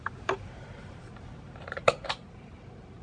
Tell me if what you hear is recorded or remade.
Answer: remade